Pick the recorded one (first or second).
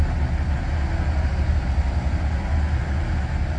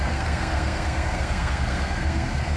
first